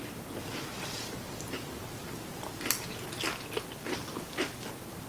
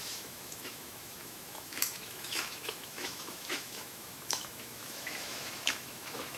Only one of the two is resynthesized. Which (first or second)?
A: second